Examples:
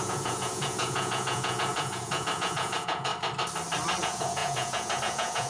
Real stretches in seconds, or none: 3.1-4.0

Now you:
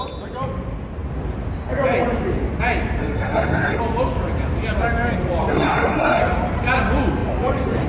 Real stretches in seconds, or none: 0.0-3.0; 3.8-5.5; 6.2-7.9

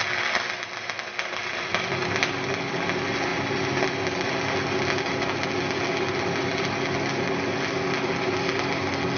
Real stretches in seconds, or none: 0.0-9.2